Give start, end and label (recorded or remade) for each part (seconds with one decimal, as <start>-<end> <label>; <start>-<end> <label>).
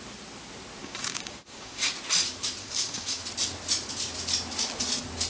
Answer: 0.0-0.8 recorded; 0.8-1.9 remade; 1.9-2.6 recorded; 2.6-3.2 remade; 3.2-5.3 recorded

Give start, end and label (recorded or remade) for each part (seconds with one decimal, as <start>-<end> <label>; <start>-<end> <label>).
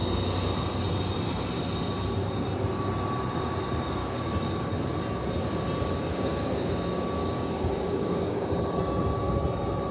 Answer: 0.0-4.0 recorded; 4.0-4.7 remade; 4.7-6.1 recorded; 6.1-6.7 remade; 6.7-7.2 recorded; 7.2-8.5 remade; 8.5-9.9 recorded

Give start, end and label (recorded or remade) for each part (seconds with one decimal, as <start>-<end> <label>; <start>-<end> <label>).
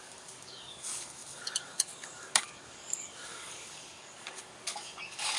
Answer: 0.0-5.4 remade